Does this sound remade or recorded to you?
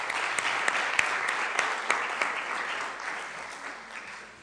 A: recorded